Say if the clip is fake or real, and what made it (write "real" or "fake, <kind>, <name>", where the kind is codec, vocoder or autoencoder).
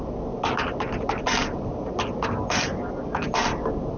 real